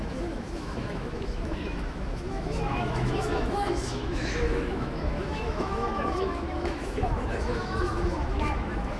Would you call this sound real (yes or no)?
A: no